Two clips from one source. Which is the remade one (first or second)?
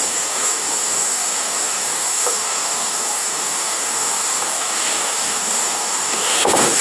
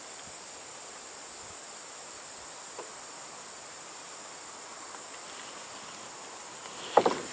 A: first